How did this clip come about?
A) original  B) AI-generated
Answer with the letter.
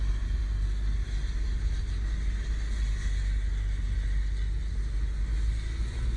A